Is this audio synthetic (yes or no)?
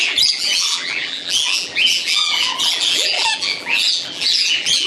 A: yes